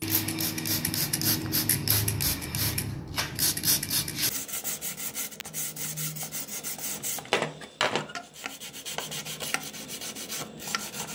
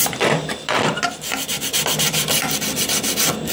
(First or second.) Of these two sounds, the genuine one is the first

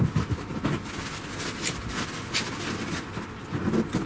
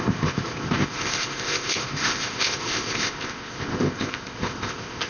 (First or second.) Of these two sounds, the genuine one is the first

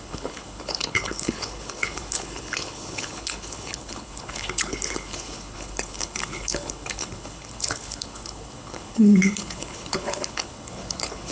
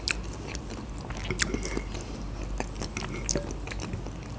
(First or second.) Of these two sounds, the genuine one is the second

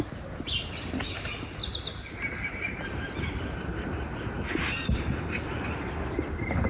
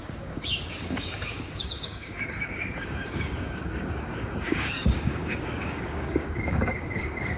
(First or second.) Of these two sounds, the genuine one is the first